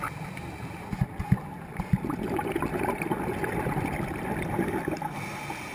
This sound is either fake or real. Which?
real